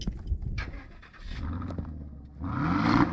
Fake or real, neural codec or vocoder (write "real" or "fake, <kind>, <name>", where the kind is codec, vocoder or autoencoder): real